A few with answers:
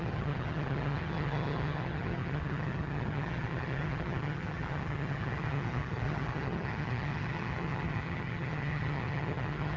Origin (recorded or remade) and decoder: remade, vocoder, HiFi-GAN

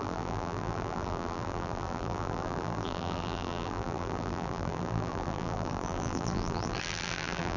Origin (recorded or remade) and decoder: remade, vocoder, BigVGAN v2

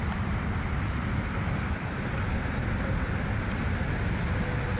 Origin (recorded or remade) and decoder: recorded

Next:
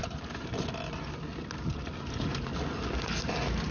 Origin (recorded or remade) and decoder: recorded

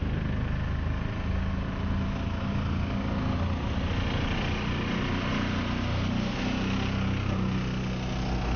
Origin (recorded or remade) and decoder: recorded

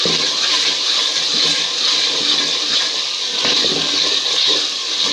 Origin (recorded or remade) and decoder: recorded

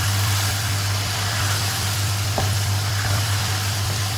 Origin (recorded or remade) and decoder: remade, vocoder, BigVGAN v2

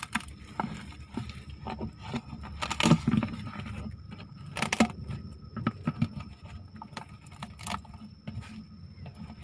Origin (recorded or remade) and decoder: recorded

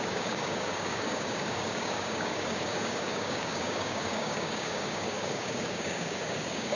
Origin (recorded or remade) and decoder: remade, codec, DAC